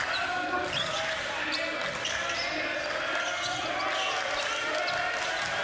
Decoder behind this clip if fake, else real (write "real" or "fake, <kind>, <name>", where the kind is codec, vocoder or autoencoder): real